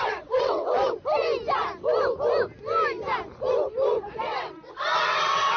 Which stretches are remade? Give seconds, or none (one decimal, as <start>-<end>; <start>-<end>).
0.0-0.8; 4.2-5.6